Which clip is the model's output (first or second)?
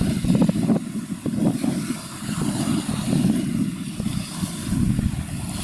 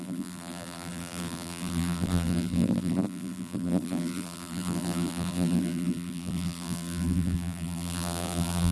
second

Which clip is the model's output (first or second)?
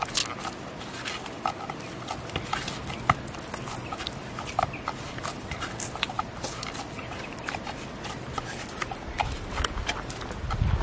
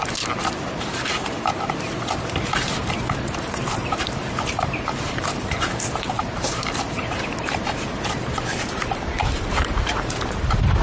second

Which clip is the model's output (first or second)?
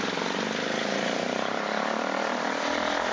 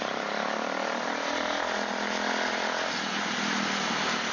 first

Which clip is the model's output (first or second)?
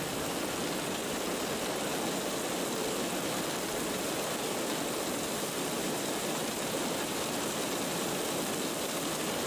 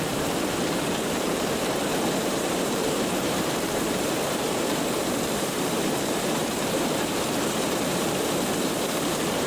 second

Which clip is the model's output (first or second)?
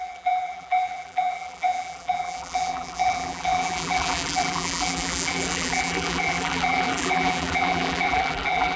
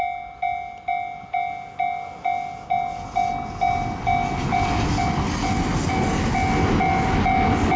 first